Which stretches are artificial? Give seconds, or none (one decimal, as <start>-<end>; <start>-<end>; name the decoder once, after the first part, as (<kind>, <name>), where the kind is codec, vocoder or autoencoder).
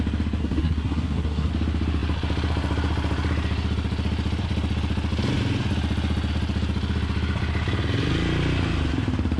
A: 0.4-1.5 (codec, SNAC)